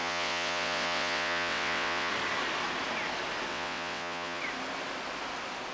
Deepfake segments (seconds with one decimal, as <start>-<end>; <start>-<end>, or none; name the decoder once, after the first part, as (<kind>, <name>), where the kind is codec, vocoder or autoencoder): 0.0-2.1 (vocoder, WaveNeXt); 3.5-4.4